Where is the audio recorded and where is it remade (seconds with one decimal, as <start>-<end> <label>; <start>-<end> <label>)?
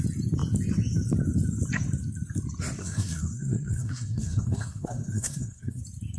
0.0-2.8 recorded; 2.8-5.8 remade; 5.8-6.2 recorded